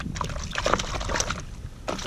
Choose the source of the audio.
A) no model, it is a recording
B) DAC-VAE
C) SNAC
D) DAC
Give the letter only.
A